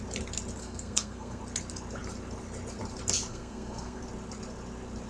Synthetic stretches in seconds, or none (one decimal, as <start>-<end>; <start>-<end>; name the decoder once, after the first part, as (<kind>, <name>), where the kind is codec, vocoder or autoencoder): 0.6-1.4 (codec, SNAC); 3.3-4.0